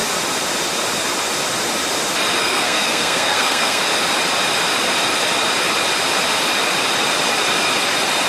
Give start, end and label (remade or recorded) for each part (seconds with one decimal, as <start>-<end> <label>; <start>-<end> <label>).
0.0-2.4 recorded; 2.4-3.8 remade; 3.8-8.3 recorded